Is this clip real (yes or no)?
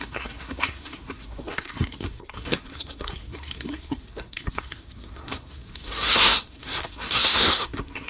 no